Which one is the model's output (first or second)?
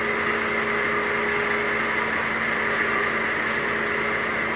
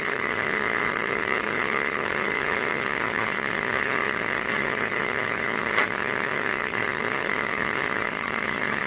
second